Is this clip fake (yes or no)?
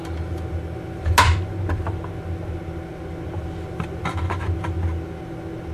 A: no